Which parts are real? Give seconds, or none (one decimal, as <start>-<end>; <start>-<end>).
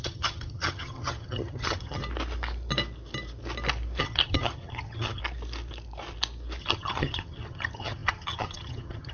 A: 2.0-4.0; 5.2-6.6